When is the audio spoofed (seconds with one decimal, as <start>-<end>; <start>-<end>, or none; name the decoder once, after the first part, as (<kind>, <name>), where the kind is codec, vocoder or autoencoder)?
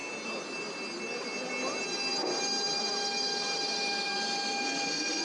none